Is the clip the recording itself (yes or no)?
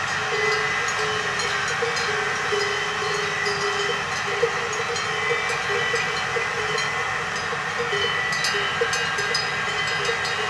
yes